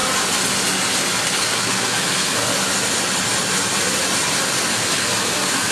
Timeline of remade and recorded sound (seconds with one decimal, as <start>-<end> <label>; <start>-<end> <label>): 0.0-1.4 recorded; 1.4-2.5 remade; 2.5-4.7 recorded; 4.7-5.7 remade

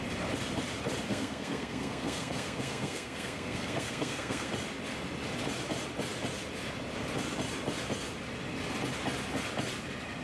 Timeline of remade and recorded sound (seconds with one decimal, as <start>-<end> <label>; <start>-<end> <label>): 0.0-1.1 recorded; 1.1-4.5 remade; 4.5-10.2 recorded

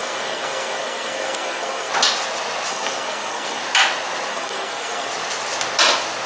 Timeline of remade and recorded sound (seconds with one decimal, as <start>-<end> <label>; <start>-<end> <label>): 0.0-1.9 remade; 1.9-2.7 recorded; 2.7-3.6 remade; 3.6-4.3 recorded; 4.3-5.1 remade; 5.1-6.3 recorded

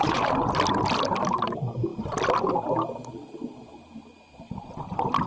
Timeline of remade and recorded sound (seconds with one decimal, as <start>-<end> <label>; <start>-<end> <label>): 0.0-5.3 recorded